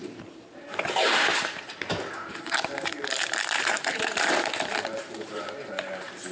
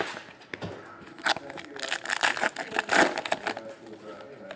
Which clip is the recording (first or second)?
second